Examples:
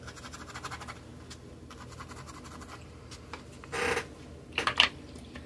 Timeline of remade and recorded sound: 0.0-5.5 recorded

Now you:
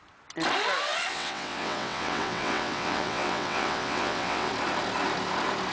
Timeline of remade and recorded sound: 0.0-1.1 recorded; 1.1-4.5 remade; 4.5-5.7 recorded

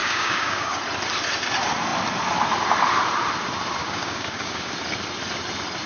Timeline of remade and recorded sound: 0.0-0.8 remade; 0.8-3.8 recorded; 3.8-4.7 remade; 4.7-5.9 recorded

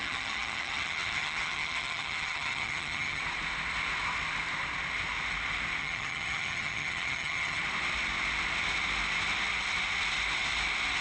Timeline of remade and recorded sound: 0.0-3.2 remade; 3.2-5.8 recorded; 5.8-7.6 remade; 7.6-11.0 recorded

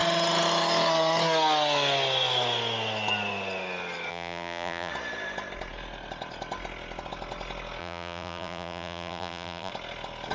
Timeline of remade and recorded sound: 0.0-4.1 recorded; 4.1-4.9 remade; 4.9-7.8 recorded; 7.8-9.7 remade; 9.7-10.3 recorded

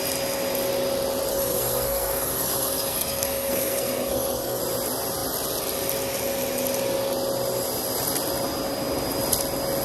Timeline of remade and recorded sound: 0.0-1.3 recorded; 1.3-4.6 remade; 4.6-9.8 recorded

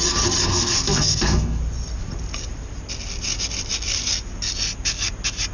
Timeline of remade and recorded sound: 0.0-0.5 recorded; 0.5-1.6 remade; 1.6-5.5 recorded

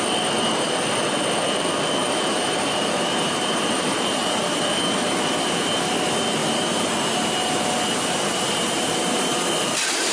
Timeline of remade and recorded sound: 0.0-2.0 recorded; 2.0-4.6 remade; 4.6-6.4 recorded; 6.4-9.5 remade; 9.5-10.1 recorded